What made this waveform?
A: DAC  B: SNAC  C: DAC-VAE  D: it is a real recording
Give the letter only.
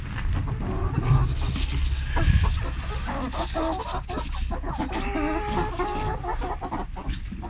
D